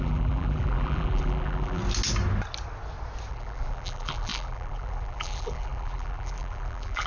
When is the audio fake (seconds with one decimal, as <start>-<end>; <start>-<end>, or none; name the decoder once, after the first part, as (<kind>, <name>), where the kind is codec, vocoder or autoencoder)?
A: 0.0-1.8 (vocoder, BigVGAN v2); 3.3-7.1